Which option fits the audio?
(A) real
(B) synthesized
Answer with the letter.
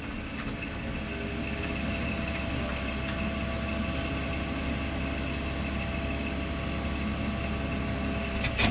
A